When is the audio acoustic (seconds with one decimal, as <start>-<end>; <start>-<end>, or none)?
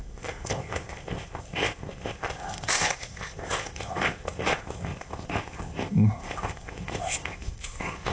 none